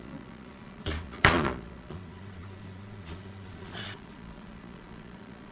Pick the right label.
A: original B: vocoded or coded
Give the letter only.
B